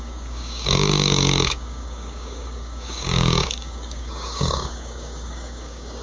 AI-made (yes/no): yes